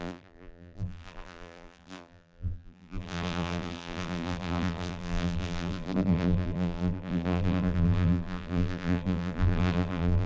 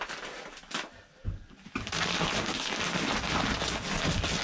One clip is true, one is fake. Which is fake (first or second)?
first